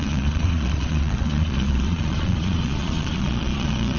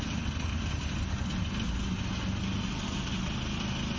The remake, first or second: first